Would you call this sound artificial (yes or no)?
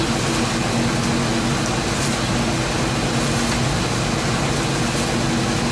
no